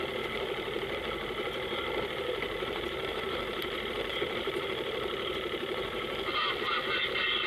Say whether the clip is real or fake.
fake